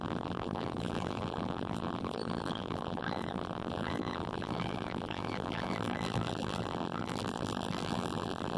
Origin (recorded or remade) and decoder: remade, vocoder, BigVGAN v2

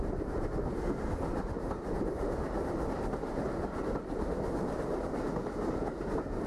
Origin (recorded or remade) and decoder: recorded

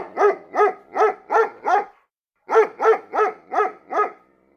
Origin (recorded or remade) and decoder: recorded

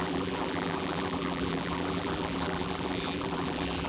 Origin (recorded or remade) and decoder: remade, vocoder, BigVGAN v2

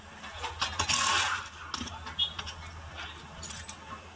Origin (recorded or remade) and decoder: recorded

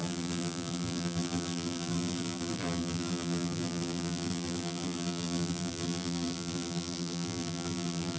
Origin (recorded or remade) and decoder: remade, vocoder, BigVGAN v2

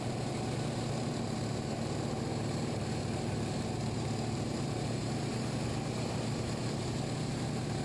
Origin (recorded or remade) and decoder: remade, vocoder, BigVGAN v2